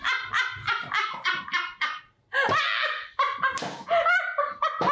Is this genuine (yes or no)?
yes